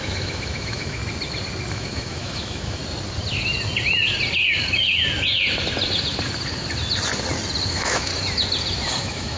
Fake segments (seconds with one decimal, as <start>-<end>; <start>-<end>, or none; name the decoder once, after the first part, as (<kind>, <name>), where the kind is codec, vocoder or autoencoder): 0.0-1.0 (autoencoder, DAC-VAE); 1.7-2.8; 7.7-8.1; 9.0-9.4